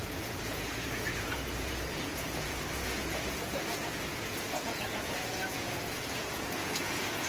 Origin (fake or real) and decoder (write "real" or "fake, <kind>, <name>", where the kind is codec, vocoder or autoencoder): fake, vocoder, Vocos